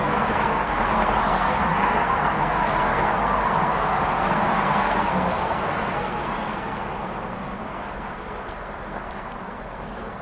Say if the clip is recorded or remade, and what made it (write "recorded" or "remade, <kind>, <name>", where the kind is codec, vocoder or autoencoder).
remade, codec, SNAC